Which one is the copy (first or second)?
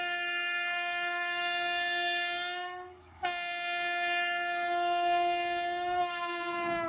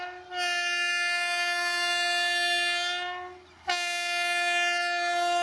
first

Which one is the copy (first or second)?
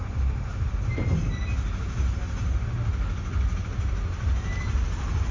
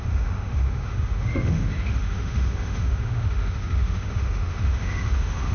second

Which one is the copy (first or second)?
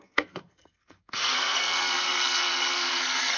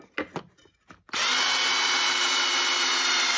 first